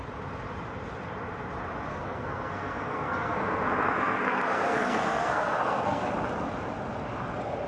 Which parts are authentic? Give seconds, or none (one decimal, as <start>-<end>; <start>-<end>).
0.0-1.9; 6.1-7.7